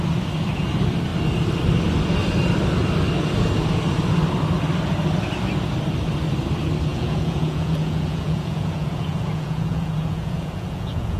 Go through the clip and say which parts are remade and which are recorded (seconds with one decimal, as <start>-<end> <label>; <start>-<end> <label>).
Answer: 0.0-6.9 recorded; 6.9-11.2 remade